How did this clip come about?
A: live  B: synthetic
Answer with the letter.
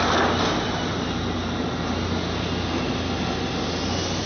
A